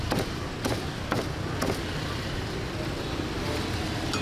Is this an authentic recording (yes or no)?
yes